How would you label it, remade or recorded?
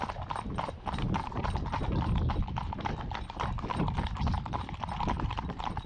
recorded